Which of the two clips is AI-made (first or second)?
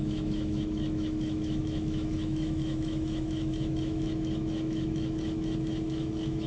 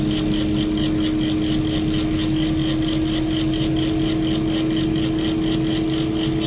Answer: first